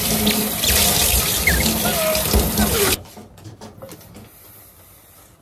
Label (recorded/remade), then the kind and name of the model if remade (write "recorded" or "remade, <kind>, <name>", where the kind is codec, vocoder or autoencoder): recorded